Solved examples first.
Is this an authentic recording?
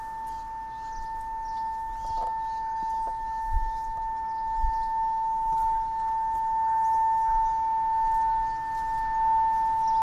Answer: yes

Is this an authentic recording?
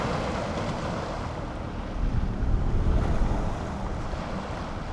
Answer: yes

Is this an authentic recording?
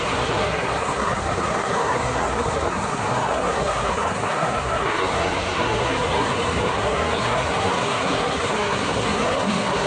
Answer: no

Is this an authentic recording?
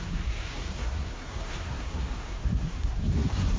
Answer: no